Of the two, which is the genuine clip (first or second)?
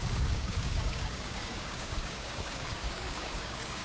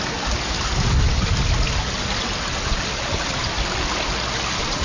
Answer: second